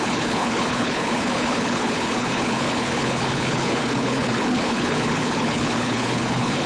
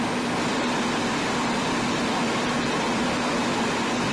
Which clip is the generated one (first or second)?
first